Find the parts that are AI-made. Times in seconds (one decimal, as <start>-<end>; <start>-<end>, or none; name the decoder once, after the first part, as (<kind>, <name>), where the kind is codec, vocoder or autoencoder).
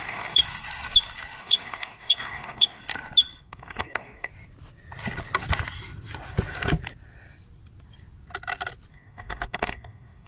0.0-0.4 (codec, DAC); 1.4-2.8; 3.4-4.3; 8.9-10.3